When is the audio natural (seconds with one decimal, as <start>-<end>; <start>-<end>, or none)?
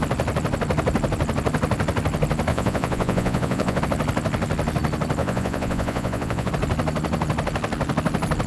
0.0-2.5; 3.8-5.2; 6.5-8.5